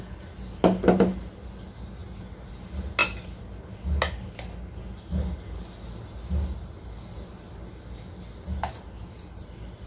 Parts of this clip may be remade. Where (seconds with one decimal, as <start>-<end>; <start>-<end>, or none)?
none